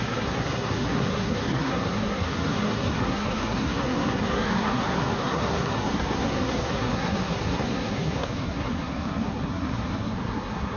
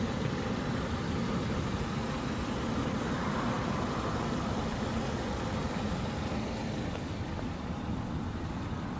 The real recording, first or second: second